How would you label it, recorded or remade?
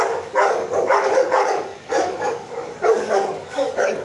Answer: remade